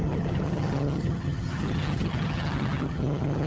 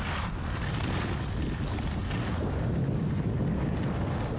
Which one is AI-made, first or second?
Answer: first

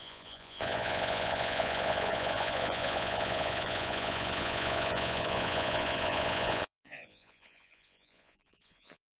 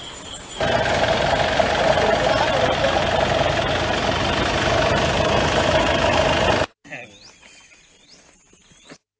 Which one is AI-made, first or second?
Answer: first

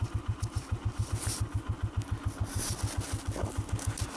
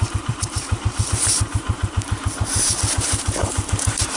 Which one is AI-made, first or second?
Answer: second